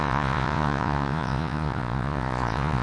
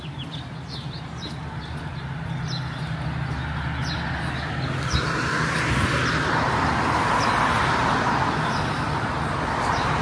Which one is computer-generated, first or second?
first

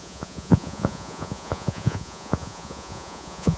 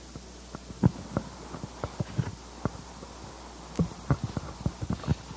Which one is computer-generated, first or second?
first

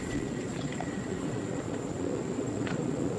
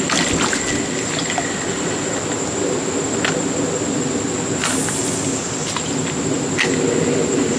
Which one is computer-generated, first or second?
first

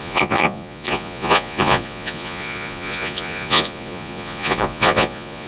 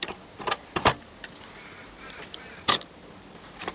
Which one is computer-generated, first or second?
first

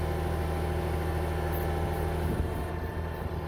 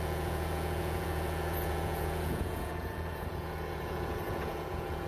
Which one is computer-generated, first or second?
second